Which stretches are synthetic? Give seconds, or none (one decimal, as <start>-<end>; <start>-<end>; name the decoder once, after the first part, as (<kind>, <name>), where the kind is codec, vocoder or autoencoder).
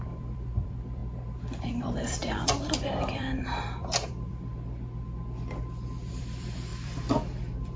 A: 0.0-1.0 (vocoder, BigVGAN v2); 1.6-4.5; 6.1-7.8